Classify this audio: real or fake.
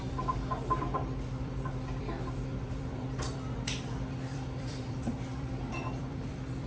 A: fake